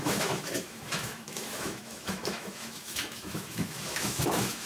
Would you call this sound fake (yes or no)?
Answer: yes